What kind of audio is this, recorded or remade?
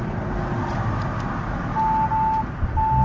recorded